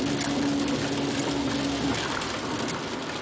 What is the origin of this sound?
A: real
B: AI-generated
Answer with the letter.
A